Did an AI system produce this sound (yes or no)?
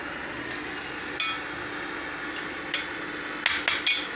no